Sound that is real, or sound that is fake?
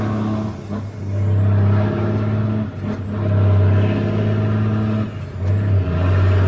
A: real